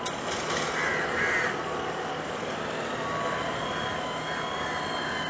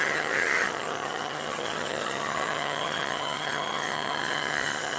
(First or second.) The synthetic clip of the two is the second